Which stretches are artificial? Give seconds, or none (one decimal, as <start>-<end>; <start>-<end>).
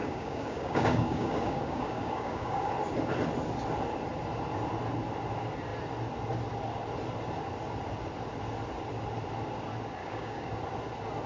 0.0-2.7; 10.0-10.5